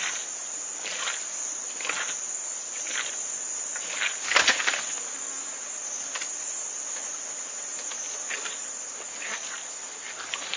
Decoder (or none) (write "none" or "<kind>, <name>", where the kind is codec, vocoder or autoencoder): none